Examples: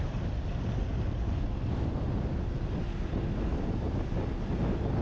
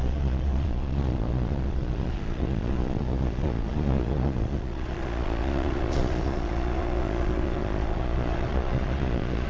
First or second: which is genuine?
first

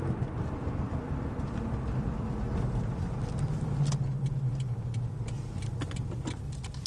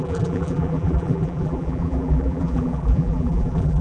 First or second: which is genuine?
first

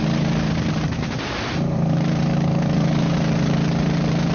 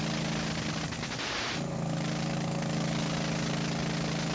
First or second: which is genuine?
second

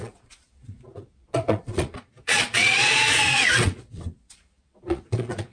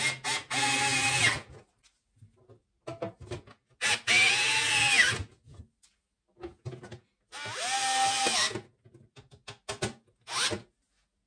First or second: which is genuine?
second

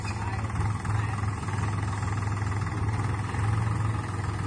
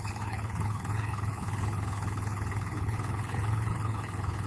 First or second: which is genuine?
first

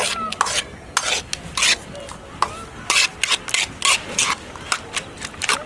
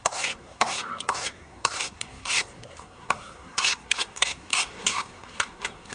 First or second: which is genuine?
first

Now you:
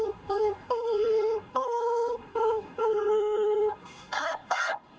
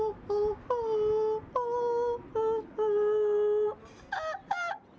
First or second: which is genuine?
second